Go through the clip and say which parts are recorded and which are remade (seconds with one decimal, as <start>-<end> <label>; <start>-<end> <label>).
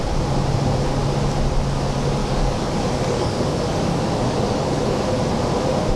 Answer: 0.0-2.2 recorded; 2.2-5.0 remade; 5.0-6.0 recorded